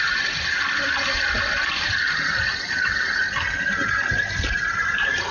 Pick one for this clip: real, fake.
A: real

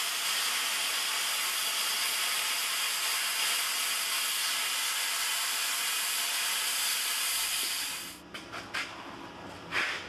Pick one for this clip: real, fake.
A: real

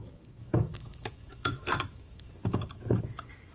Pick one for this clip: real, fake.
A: fake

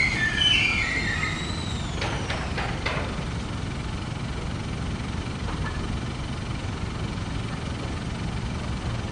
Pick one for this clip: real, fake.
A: real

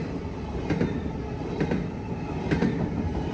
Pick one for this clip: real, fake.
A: fake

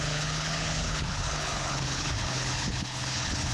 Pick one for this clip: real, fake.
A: fake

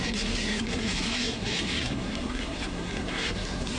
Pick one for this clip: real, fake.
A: fake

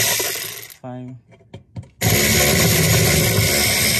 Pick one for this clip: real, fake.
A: real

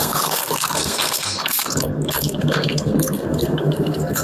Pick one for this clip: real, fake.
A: fake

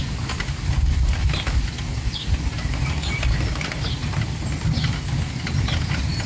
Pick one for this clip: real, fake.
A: real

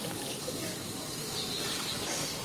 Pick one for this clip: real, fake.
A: fake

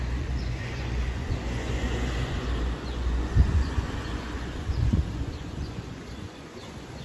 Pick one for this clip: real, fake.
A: fake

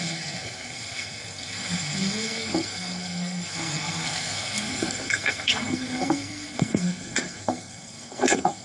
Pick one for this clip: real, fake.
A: fake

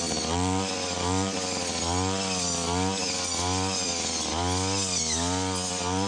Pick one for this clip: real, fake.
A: real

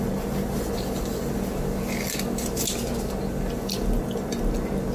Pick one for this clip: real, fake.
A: real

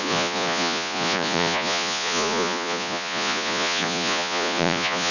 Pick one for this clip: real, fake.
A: fake